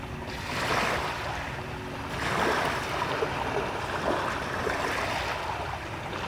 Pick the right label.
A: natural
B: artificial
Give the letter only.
A